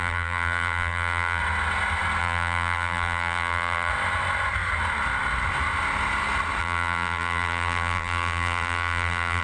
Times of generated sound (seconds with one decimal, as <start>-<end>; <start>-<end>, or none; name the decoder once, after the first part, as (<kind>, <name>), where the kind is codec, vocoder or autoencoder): 0.0-1.4 (vocoder, BigVGAN v2); 2.2-3.9; 6.6-9.4